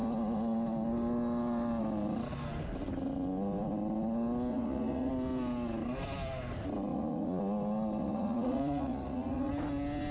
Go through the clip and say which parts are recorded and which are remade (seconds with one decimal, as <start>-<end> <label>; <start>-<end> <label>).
0.0-4.5 recorded; 4.5-5.1 remade; 5.1-6.9 recorded; 6.9-7.4 remade; 7.4-8.0 recorded; 8.0-9.5 remade; 9.5-10.1 recorded